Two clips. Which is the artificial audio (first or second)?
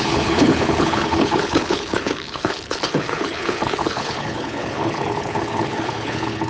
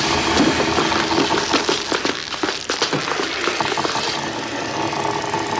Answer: first